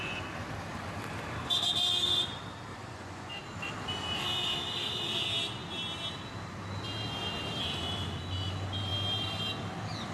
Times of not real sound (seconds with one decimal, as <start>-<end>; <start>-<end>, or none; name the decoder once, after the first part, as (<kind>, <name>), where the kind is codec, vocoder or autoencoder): 2.7-3.3 (vocoder, Vocos)

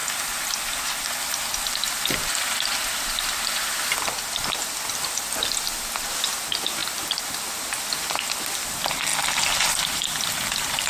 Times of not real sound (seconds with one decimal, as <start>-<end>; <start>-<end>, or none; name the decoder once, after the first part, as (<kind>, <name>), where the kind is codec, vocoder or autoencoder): 0.5-9.1 (vocoder, BigVGAN v2); 9.7-10.9

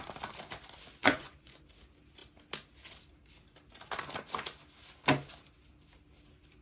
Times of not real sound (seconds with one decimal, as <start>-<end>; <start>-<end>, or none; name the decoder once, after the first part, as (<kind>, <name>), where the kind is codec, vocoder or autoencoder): 1.0-1.6 (vocoder, Vocos)